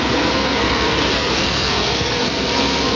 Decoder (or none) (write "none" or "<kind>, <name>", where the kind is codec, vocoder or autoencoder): codec, SNAC